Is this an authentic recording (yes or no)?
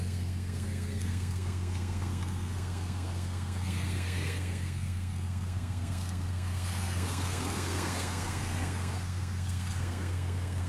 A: no